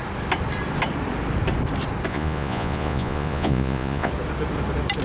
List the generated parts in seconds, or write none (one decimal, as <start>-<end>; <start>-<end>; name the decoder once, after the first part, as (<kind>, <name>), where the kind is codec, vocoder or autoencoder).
2.1-4.1 (vocoder, Vocos)